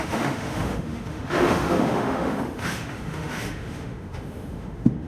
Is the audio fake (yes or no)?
yes